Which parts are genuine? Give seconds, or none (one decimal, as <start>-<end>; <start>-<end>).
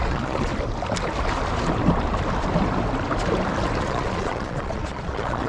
0.5-3.8